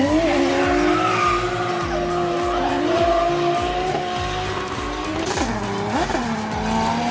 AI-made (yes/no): no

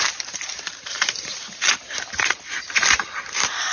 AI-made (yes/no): yes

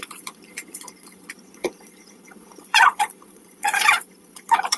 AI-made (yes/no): yes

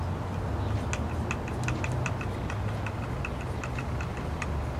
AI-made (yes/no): no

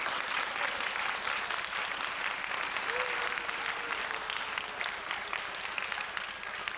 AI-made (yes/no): no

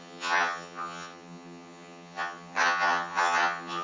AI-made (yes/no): yes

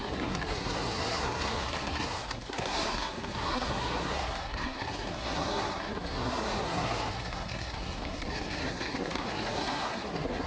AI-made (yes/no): yes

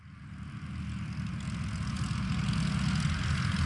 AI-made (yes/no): no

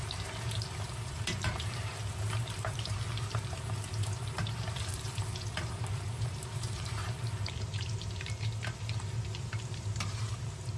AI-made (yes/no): yes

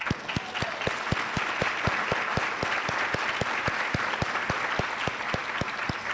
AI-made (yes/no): no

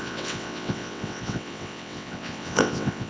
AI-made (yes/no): yes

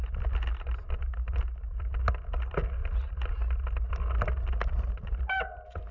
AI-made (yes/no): no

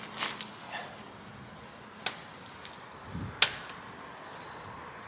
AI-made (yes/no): no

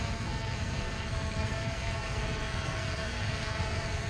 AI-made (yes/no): yes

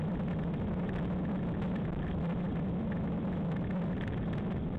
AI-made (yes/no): no